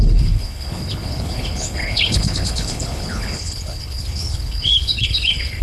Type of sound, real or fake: fake